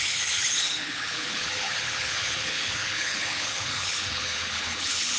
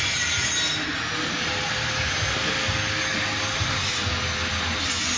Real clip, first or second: second